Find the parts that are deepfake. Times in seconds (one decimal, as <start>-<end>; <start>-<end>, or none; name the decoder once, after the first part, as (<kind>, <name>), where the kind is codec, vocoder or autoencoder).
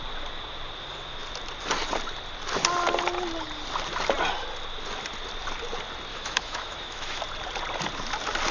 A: 6.1-7.2 (autoencoder, DAC-VAE)